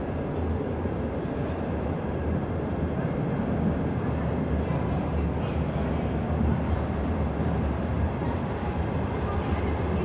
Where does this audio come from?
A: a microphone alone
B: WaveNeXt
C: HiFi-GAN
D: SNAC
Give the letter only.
A